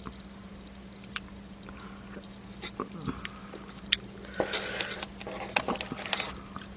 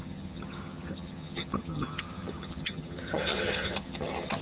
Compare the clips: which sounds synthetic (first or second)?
second